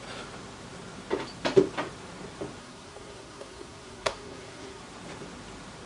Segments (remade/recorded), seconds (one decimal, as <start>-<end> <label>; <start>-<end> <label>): 0.0-2.6 recorded; 2.6-4.8 remade; 4.8-5.9 recorded